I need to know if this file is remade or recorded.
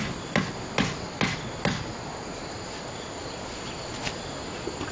recorded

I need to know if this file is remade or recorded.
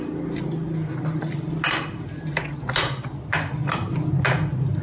recorded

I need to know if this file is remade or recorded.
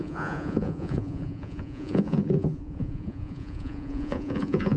remade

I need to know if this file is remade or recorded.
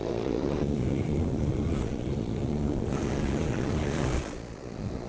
remade